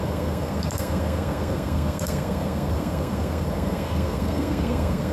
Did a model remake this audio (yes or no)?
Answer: yes